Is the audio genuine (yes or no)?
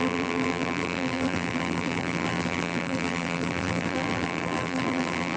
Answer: no